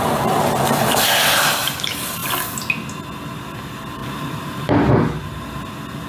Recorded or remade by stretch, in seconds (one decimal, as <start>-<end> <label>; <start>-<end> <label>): 0.0-4.0 recorded; 4.0-4.9 remade; 4.9-6.1 recorded